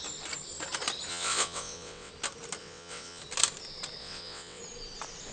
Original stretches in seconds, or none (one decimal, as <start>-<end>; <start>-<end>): 0.0-1.1; 2.1-2.6; 3.2-4.0; 4.6-5.3